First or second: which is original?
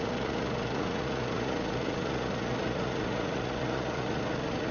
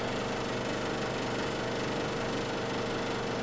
second